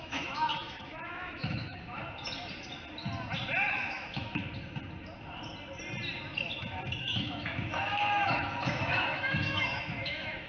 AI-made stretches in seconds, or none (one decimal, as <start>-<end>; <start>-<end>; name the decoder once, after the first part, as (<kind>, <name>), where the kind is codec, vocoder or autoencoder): 0.0-2.0 (autoencoder, DAC-VAE); 3.7-4.4; 7.0-10.5